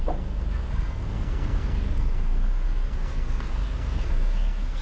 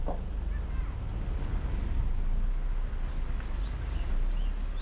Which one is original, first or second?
second